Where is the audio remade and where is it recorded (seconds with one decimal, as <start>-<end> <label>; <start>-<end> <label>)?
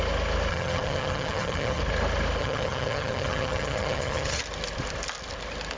0.0-0.5 recorded; 0.5-1.8 remade; 1.8-2.4 recorded; 2.4-4.4 remade; 4.4-5.8 recorded